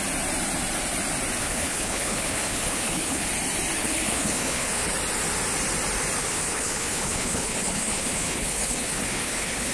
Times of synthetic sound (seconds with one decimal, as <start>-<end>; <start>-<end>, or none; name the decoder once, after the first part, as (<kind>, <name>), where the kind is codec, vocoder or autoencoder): 1.4-3.3 (codec, HILCodec); 3.8-4.9; 6.2-9.7